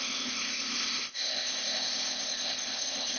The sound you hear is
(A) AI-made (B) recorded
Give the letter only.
A